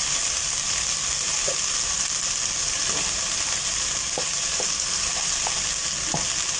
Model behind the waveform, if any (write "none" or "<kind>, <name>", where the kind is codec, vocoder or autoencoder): none